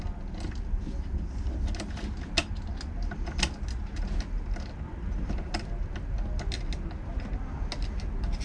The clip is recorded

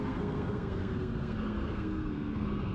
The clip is remade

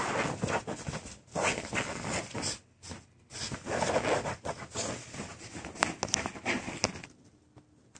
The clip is recorded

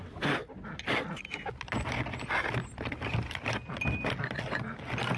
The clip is recorded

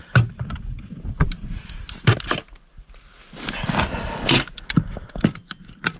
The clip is recorded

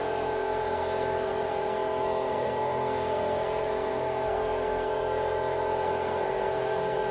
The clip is remade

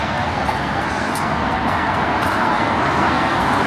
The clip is remade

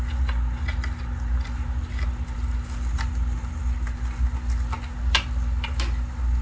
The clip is recorded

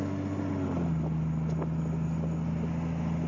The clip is recorded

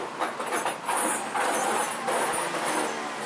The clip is recorded